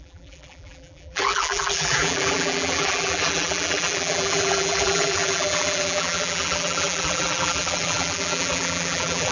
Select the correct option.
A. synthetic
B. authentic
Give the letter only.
A